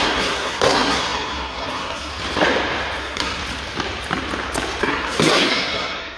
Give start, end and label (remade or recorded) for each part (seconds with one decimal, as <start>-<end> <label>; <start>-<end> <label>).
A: 0.0-2.1 remade; 2.1-3.0 recorded; 3.0-3.4 remade; 3.4-4.8 recorded; 4.8-6.2 remade